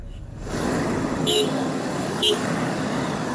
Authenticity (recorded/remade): remade